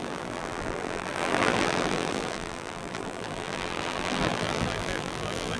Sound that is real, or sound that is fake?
fake